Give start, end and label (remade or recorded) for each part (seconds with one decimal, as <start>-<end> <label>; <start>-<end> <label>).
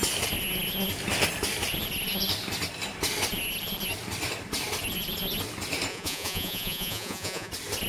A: 0.0-5.9 recorded; 5.9-7.5 remade; 7.5-7.9 recorded